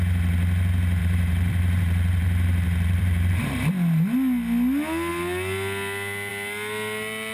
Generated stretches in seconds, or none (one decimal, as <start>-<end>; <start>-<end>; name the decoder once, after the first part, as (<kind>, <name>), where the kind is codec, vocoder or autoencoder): 1.0-3.7 (vocoder, BigVGAN v2)